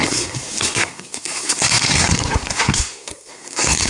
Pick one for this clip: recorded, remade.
remade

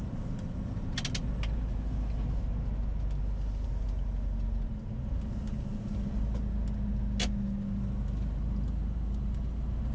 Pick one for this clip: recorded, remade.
recorded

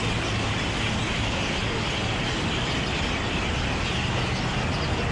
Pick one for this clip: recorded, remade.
recorded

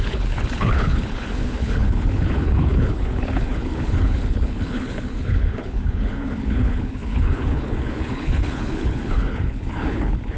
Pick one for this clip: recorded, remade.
remade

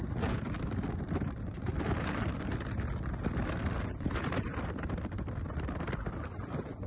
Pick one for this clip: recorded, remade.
remade